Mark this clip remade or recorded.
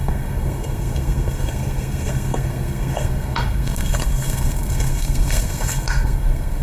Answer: remade